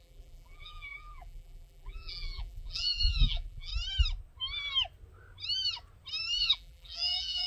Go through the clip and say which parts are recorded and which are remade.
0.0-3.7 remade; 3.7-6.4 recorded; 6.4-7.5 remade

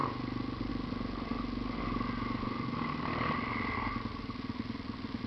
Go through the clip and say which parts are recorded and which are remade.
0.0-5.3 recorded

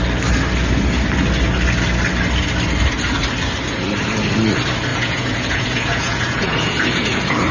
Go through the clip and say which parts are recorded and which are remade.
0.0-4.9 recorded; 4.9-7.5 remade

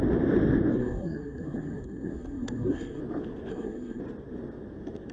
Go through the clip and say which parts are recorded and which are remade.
0.0-0.7 recorded; 0.7-3.0 remade; 3.0-3.5 recorded; 3.5-4.0 remade; 4.0-5.1 recorded

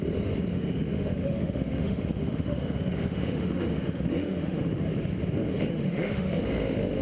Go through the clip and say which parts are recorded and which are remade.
0.0-0.5 recorded; 0.5-4.7 remade; 4.7-5.5 recorded; 5.5-6.4 remade; 6.4-7.0 recorded

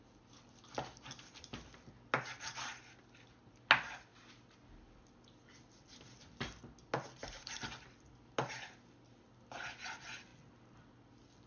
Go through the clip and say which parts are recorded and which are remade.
0.0-11.5 recorded

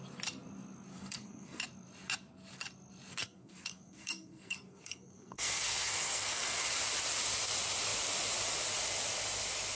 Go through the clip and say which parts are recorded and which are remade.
0.0-0.9 recorded; 0.9-1.6 remade; 1.6-3.1 recorded; 3.1-6.6 remade; 6.6-9.7 recorded